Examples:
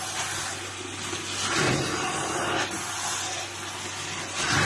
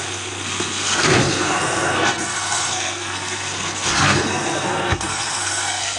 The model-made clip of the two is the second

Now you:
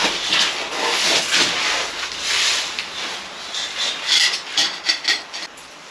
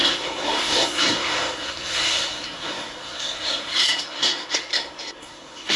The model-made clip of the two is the second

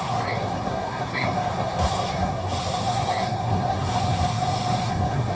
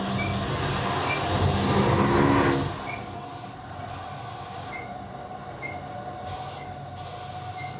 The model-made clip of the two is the first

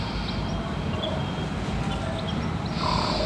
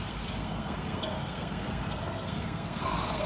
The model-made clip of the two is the second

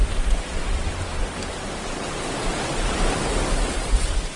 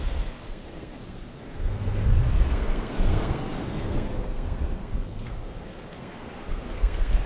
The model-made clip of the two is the second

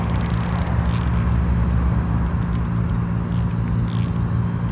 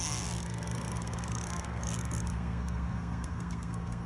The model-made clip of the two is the second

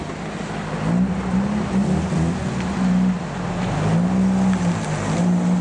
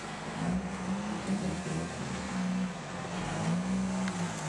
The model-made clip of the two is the second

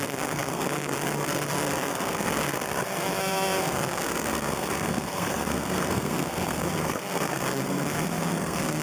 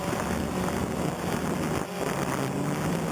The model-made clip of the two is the first